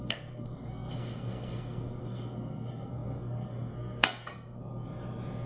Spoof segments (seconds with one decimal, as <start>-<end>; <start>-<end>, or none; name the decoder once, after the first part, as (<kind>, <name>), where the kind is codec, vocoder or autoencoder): 0.0-4.6 (codec, SNAC)